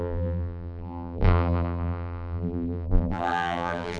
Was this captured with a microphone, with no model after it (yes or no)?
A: no